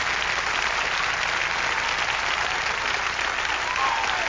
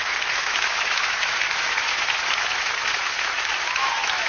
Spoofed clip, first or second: second